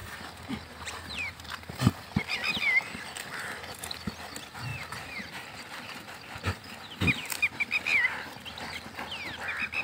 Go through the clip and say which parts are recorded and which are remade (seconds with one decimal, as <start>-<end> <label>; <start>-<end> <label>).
0.0-2.1 remade; 2.1-4.7 recorded; 4.7-6.8 remade; 6.8-9.8 recorded